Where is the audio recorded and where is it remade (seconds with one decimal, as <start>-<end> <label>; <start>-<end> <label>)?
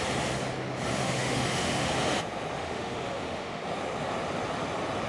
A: 0.0-0.9 recorded; 0.9-1.9 remade; 1.9-2.6 recorded; 2.6-3.6 remade; 3.6-5.1 recorded